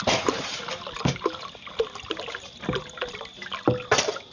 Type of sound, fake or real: real